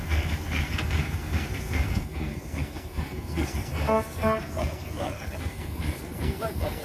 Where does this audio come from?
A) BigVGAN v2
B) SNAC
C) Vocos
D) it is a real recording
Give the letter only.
B